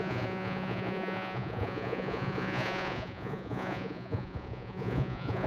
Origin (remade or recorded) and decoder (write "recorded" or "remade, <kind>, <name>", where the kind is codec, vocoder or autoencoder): remade, vocoder, Vocos